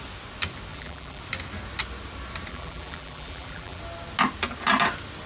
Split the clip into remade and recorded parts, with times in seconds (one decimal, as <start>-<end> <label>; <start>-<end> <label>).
0.0-0.7 recorded; 0.7-1.2 remade; 1.2-2.5 recorded; 2.5-3.8 remade; 3.8-5.3 recorded